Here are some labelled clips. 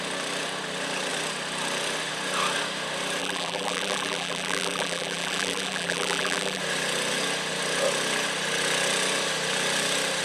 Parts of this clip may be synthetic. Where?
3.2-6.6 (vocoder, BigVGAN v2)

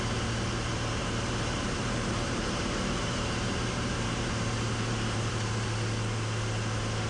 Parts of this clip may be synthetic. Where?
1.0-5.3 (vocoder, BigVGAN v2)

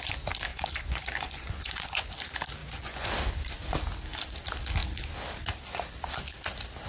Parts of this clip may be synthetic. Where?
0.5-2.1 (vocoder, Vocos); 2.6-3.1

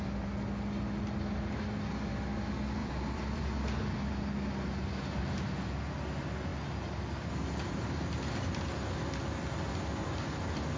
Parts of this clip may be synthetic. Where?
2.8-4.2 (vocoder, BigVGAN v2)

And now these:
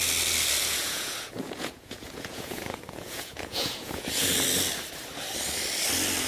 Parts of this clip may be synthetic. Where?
0.7-4.3 (vocoder, Vocos)